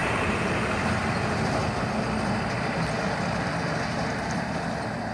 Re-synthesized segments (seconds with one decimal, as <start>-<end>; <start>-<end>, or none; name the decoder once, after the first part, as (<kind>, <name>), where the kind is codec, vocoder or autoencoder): 0.0-1.0 (vocoder, BigVGAN v2)